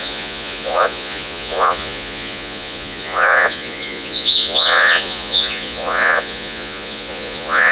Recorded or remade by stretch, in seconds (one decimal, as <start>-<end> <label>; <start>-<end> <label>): 0.0-7.7 remade

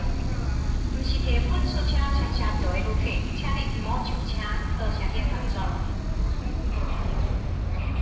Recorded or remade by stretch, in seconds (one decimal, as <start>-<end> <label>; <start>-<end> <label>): 0.0-8.0 recorded